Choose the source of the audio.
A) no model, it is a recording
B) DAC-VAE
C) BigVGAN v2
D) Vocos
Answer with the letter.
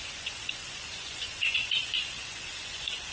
D